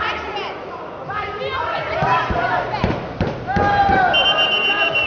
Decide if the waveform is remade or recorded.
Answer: recorded